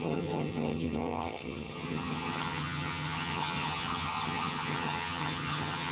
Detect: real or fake fake